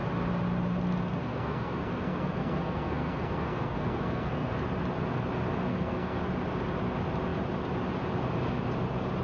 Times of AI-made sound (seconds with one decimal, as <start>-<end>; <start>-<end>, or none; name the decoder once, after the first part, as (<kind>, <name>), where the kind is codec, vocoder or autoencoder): 1.2-4.5 (codec, SNAC); 5.7-6.2

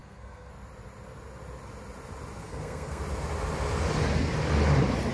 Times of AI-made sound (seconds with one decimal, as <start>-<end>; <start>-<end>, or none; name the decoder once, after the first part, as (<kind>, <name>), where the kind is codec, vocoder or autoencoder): 0.0-0.5 (codec, SNAC); 2.4-3.0

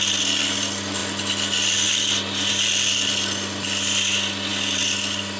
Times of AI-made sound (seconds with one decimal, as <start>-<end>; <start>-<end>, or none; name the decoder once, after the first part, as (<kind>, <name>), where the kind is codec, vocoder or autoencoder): none

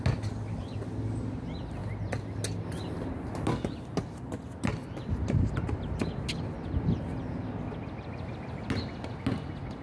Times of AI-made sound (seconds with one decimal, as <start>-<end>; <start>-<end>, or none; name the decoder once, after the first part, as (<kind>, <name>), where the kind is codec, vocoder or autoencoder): none

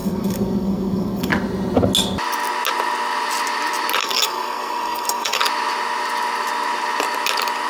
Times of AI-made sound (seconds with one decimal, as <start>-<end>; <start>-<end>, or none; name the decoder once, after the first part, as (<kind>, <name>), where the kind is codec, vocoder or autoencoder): 0.0-1.3 (codec, SNAC); 4.0-5.4